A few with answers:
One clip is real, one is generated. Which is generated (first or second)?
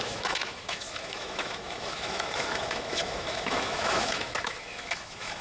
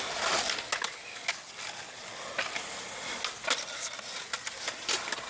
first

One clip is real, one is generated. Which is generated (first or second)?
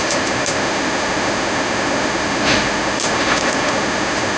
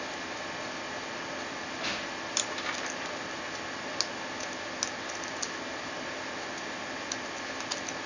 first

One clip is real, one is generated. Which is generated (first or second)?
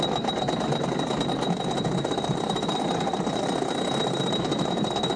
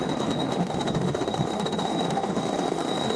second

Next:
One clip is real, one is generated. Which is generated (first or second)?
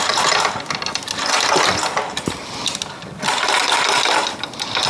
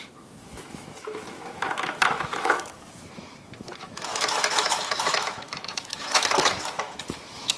second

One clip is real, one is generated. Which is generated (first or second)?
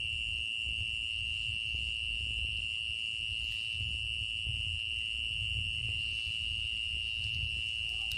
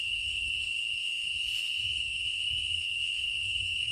second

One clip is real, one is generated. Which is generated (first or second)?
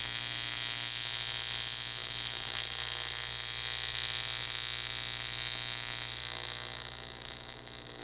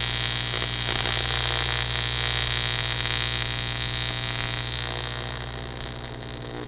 first